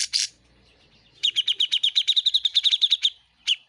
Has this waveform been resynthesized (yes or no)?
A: yes